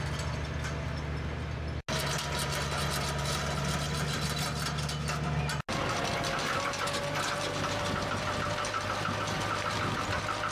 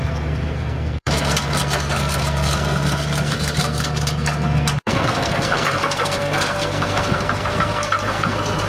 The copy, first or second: second